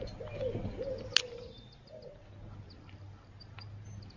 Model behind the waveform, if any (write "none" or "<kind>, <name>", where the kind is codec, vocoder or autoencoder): none